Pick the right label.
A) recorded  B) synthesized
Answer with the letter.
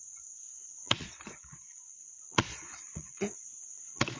B